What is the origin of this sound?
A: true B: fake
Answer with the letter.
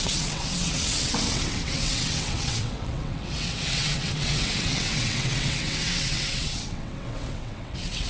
B